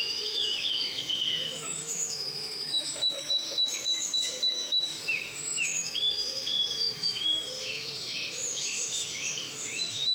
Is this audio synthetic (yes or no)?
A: yes